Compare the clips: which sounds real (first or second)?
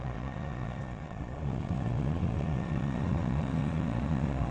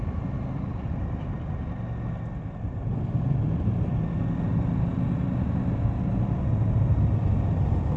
second